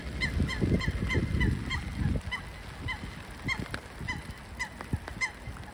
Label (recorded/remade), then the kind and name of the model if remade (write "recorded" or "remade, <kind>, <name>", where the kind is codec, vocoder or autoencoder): recorded